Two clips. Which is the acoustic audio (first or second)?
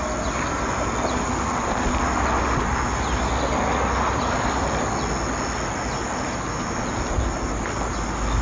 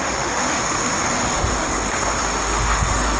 first